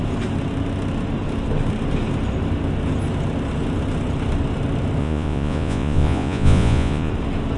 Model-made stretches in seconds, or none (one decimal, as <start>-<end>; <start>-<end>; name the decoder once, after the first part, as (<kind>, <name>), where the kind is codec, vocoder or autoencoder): 5.0-7.1 (vocoder, Vocos)